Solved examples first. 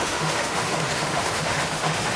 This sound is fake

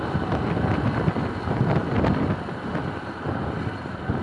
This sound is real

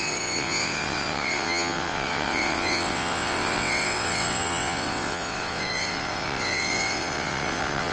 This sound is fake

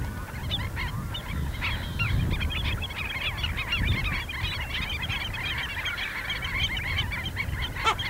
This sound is real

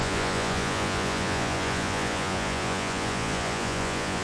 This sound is fake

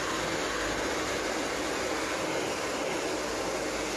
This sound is real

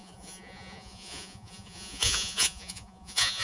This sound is fake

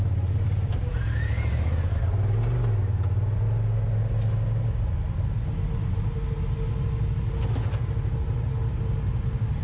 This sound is real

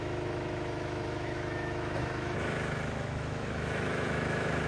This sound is fake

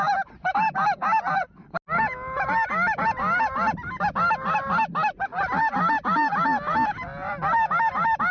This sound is real